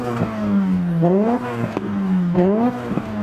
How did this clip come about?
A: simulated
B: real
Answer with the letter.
A